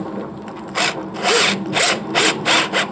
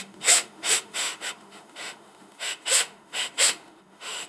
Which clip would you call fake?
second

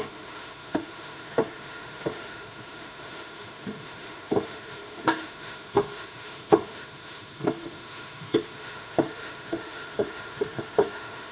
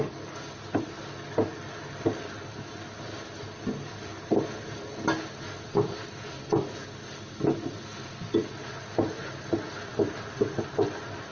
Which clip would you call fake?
first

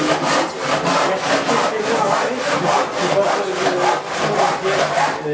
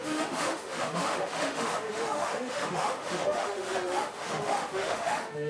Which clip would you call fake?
second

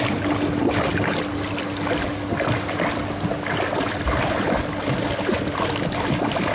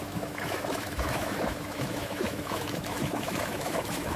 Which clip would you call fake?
second